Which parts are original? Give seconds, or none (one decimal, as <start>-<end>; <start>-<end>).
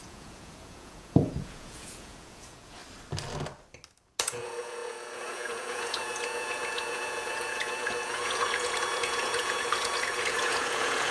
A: 2.8-4.2